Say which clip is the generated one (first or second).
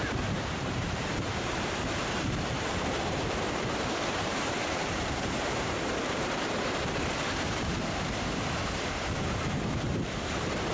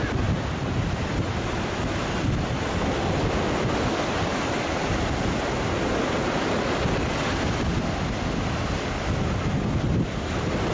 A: first